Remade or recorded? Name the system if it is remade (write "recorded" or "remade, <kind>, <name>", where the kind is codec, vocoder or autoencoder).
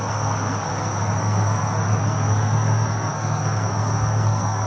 remade, codec, SNAC